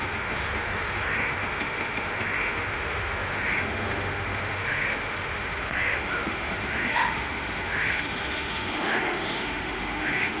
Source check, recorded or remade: remade